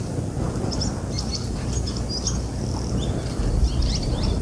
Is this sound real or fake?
real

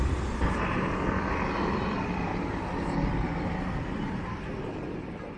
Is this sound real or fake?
real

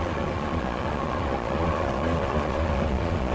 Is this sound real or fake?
fake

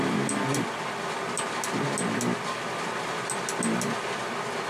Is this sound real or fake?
real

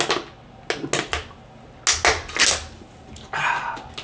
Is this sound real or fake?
real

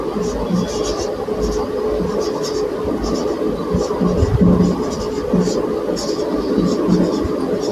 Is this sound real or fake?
real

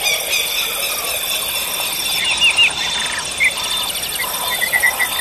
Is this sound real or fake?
real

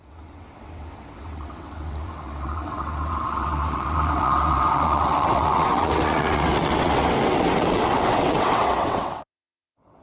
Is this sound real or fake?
fake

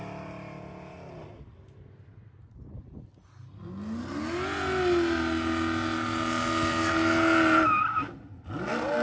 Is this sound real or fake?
real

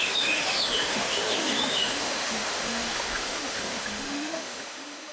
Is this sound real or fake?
fake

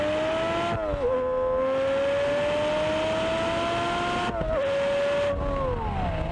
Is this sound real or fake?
real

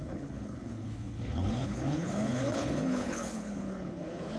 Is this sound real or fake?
fake